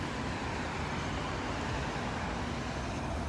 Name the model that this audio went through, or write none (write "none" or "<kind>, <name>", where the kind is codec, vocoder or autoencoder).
none